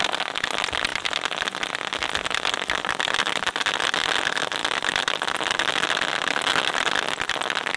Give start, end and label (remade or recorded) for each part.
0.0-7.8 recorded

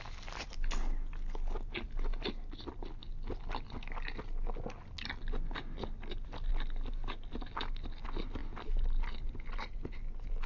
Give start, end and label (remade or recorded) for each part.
0.0-10.5 recorded

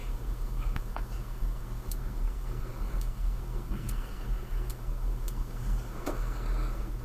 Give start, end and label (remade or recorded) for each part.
0.0-7.0 remade

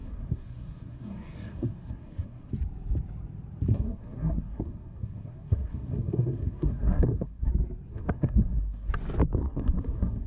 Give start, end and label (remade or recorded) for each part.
0.0-2.5 remade; 2.5-3.7 recorded; 3.7-7.5 remade; 7.5-7.9 recorded; 7.9-8.9 remade; 8.9-9.4 recorded; 9.4-10.3 remade